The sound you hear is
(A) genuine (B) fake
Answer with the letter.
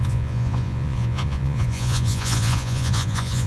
B